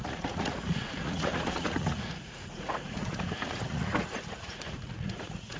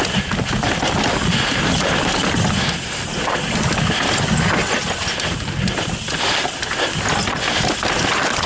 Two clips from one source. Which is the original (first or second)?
second